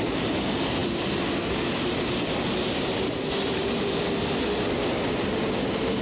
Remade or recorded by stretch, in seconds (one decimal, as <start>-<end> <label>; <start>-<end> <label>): 0.0-6.0 recorded